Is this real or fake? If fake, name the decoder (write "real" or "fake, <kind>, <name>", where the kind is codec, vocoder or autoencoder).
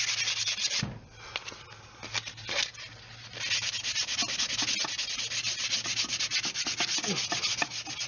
real